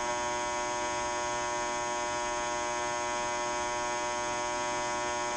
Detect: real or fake real